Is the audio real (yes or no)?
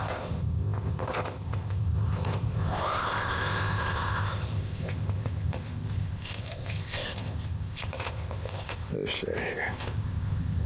no